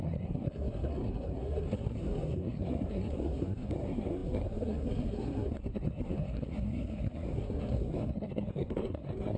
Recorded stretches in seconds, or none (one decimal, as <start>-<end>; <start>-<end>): none